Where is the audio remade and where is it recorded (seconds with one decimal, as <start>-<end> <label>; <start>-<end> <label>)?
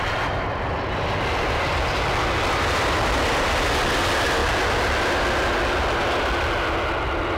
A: 0.0-7.4 recorded